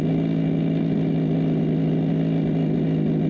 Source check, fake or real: real